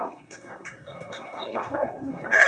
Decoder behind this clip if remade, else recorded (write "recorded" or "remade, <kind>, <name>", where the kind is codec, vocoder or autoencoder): remade, codec, SNAC